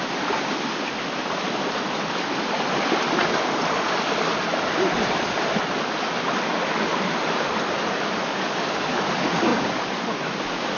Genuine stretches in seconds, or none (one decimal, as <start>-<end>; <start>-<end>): 0.0-10.8